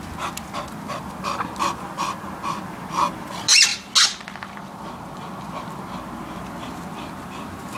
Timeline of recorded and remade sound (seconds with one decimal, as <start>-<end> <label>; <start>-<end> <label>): 0.0-7.8 recorded